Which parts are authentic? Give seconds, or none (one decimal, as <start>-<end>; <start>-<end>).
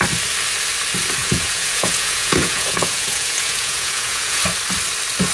0.0-1.2; 4.4-5.3